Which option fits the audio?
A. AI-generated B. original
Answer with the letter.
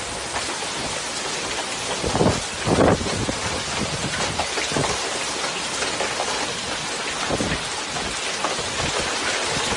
B